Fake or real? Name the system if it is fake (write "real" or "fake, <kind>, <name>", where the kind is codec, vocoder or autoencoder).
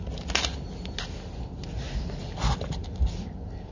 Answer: real